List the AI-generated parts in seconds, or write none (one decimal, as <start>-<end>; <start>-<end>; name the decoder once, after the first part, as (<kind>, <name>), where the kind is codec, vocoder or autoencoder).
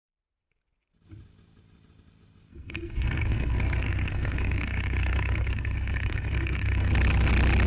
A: 2.5-6.9 (codec, SNAC)